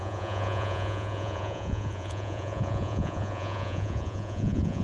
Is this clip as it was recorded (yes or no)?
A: no